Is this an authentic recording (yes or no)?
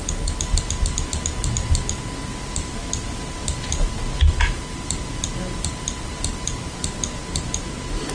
yes